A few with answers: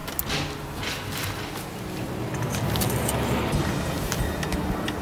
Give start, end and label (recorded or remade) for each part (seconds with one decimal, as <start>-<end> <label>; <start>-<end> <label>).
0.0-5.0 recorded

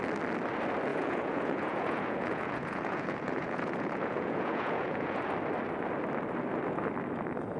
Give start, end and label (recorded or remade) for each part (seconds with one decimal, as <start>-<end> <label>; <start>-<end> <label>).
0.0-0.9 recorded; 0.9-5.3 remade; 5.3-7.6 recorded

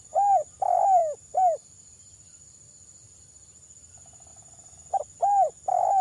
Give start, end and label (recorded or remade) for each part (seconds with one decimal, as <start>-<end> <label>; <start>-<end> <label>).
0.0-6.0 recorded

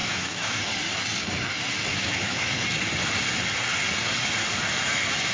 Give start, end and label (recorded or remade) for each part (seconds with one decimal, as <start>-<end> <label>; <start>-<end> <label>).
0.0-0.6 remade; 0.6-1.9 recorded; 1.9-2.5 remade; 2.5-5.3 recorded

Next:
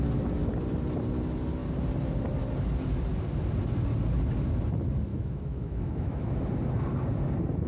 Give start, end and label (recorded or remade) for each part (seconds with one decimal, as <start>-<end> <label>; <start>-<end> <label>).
0.0-5.1 recorded; 5.1-6.5 remade; 6.5-7.7 recorded

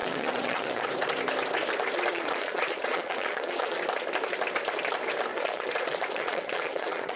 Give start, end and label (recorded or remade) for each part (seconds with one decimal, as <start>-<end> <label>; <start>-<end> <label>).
0.0-0.9 remade; 0.9-2.1 recorded; 2.1-3.8 remade; 3.8-5.3 recorded; 5.3-7.2 remade

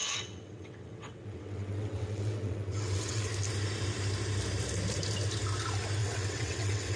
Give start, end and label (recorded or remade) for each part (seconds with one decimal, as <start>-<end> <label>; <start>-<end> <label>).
0.0-3.3 remade; 3.3-6.0 recorded; 6.0-7.0 remade